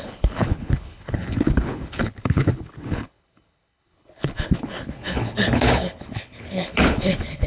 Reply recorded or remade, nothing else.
remade